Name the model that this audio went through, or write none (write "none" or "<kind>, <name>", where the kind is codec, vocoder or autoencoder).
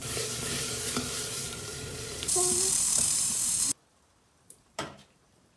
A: vocoder, BigVGAN v2